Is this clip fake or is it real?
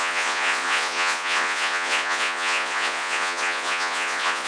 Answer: fake